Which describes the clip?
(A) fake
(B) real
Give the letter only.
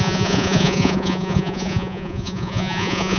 A